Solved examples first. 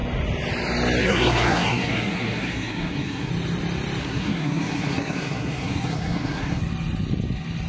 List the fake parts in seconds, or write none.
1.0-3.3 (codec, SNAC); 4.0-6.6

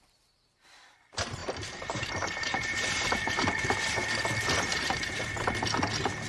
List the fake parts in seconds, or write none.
1.4-4.1 (vocoder, BigVGAN v2); 4.7-5.3

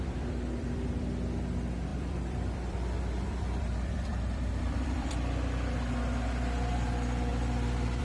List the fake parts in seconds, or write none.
0.0-7.3 (vocoder, BigVGAN v2)

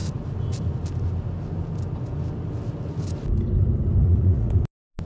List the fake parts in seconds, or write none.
4.0-4.6 (vocoder, Vocos)